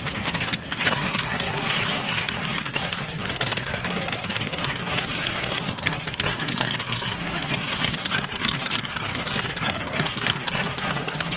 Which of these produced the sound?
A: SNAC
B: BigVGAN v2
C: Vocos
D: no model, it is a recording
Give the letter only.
A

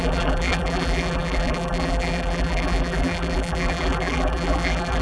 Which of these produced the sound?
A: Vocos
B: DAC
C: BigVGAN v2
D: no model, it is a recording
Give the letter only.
C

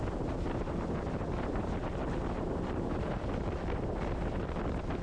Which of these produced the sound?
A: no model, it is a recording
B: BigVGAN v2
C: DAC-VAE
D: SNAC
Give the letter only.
A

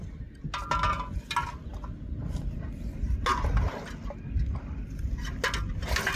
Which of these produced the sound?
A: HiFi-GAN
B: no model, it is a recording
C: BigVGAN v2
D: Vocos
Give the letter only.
B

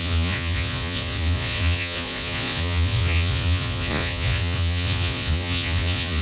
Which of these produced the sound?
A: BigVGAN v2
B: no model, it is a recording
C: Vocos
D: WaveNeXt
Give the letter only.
C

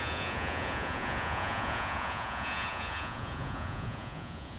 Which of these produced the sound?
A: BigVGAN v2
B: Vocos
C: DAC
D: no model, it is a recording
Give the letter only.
B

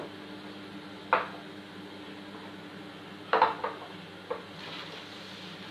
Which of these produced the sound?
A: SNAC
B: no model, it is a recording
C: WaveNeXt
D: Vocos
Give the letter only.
B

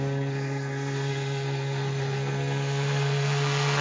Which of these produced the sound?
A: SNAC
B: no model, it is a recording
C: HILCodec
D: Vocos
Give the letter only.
A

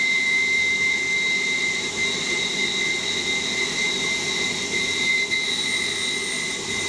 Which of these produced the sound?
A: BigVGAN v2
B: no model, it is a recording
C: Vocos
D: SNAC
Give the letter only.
A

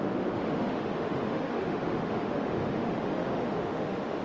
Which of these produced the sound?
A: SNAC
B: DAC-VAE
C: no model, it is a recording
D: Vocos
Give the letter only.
B